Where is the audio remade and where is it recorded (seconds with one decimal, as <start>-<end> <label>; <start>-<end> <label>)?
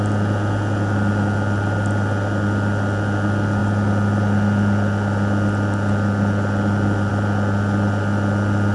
0.0-8.7 recorded